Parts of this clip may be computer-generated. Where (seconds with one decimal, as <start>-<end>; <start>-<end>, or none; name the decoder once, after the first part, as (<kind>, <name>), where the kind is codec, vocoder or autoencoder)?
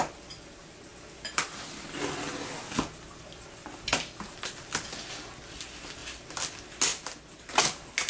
none